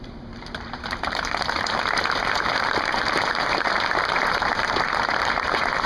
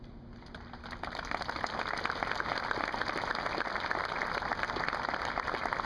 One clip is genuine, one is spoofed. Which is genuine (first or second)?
second